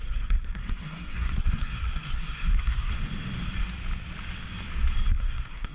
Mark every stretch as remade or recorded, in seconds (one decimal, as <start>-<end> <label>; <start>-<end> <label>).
0.0-2.9 remade; 2.9-5.1 recorded; 5.1-5.7 remade